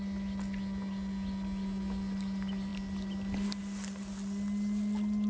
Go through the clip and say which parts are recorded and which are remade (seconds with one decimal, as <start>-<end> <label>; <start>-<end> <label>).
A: 0.0-5.3 recorded